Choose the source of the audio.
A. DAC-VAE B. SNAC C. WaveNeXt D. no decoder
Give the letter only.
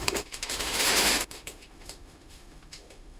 A